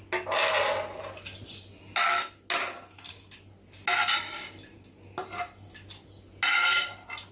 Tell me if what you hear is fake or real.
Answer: real